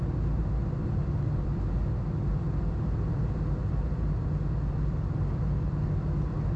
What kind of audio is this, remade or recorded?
recorded